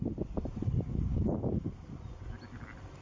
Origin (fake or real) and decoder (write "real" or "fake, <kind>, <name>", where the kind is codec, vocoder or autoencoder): real